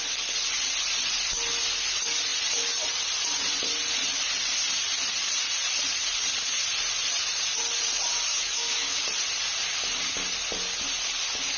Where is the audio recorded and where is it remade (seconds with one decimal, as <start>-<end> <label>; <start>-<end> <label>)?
0.0-8.3 recorded; 8.3-9.0 remade; 9.0-11.6 recorded